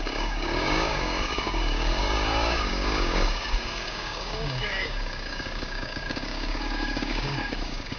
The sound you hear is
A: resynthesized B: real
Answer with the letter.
A